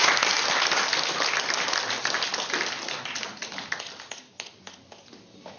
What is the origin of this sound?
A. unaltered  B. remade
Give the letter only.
A